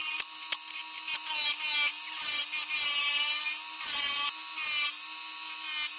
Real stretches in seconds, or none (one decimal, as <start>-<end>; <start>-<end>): 0.0-6.0